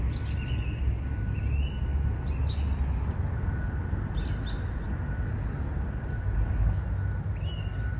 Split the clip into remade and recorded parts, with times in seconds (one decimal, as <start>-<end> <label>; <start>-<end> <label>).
0.0-8.0 recorded